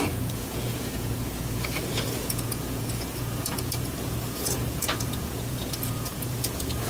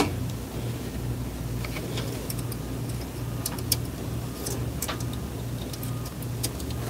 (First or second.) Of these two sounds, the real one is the second